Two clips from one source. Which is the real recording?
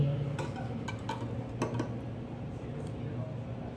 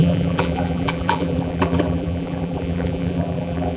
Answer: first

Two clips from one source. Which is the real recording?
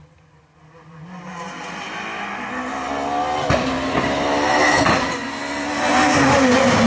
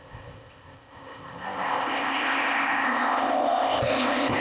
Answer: first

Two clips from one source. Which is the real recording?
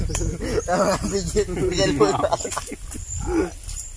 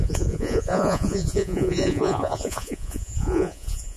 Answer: first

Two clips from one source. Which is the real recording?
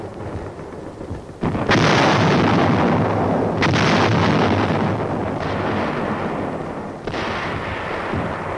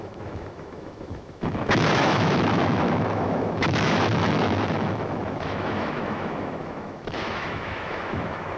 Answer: first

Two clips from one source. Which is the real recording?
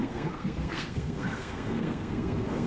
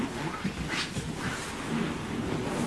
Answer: second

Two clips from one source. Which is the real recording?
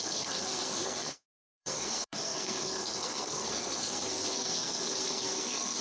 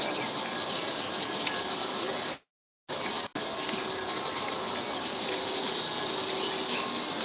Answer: second